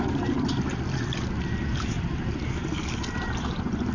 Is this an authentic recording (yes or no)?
yes